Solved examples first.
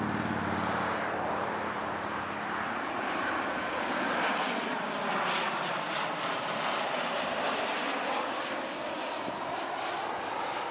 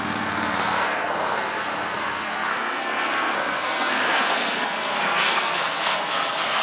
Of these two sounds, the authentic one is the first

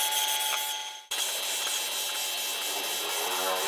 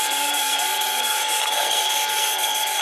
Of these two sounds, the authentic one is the first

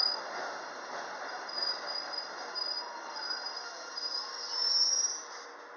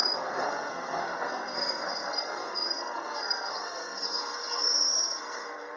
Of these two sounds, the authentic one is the first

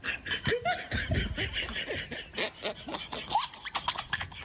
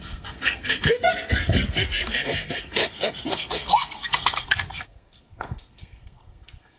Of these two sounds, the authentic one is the first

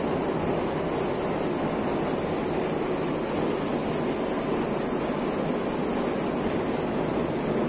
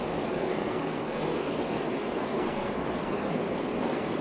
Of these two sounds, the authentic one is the first